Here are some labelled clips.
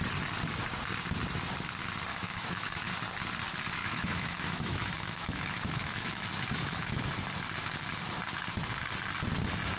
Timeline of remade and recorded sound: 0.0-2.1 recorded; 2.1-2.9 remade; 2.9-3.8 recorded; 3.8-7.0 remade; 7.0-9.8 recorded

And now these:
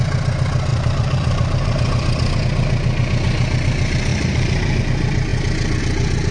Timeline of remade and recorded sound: 0.0-0.7 recorded; 0.7-2.4 remade; 2.4-4.1 recorded; 4.1-4.8 remade; 4.8-6.3 recorded

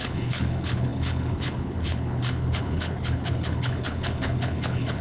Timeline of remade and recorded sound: 0.0-5.0 remade

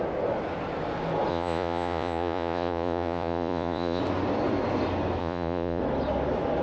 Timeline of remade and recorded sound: 0.0-1.3 recorded; 1.3-4.0 remade; 4.0-5.2 recorded; 5.2-5.8 remade; 5.8-6.6 recorded

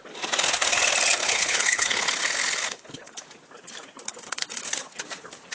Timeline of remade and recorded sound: 0.0-1.2 recorded; 1.2-2.1 remade; 2.1-2.6 recorded; 2.6-3.3 remade; 3.3-4.1 recorded; 4.1-4.6 remade; 4.6-5.5 recorded

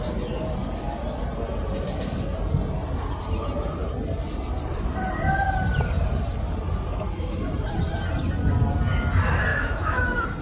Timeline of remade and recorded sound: 0.0-9.5 recorded; 9.5-10.0 remade; 10.0-10.4 recorded